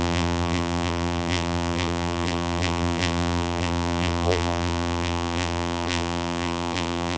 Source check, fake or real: fake